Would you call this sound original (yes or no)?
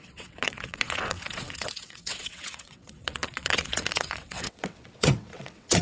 no